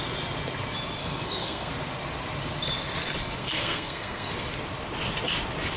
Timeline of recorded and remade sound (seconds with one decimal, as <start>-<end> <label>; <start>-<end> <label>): 0.0-1.0 recorded; 1.0-1.7 remade; 1.7-3.4 recorded; 3.4-4.3 remade; 4.3-5.8 recorded